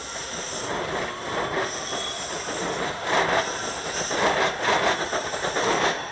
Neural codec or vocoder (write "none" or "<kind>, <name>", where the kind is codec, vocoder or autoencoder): none